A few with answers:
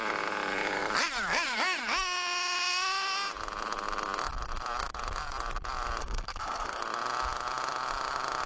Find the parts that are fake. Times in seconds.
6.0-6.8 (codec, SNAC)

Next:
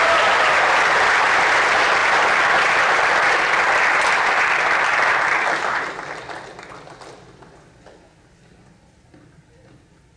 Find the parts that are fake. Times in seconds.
none

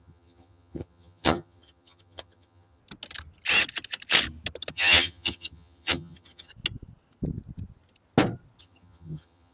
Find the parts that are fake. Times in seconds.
0.0-2.8 (vocoder, HiFi-GAN); 4.7-6.5; 8.6-9.5

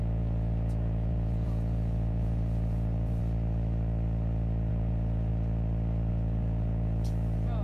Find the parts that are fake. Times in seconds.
0.0-3.2 (vocoder, Vocos); 4.7-5.3; 6.1-7.6